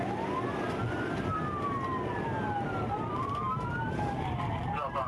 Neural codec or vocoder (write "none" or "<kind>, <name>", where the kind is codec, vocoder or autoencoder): none